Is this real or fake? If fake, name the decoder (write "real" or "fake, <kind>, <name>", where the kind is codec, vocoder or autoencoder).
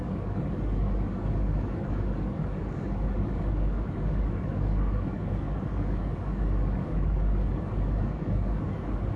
fake, codec, DAC